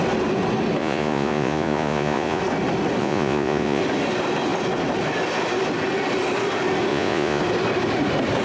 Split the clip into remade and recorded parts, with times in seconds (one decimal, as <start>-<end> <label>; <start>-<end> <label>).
0.0-0.8 recorded; 0.8-2.4 remade; 2.4-3.0 recorded; 3.0-3.8 remade; 3.8-6.9 recorded; 6.9-7.4 remade; 7.4-8.4 recorded